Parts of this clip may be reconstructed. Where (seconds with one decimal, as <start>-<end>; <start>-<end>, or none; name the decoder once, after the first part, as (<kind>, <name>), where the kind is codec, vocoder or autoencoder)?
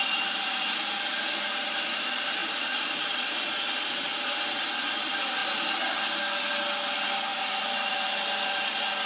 2.4-3.2 (vocoder, BigVGAN v2)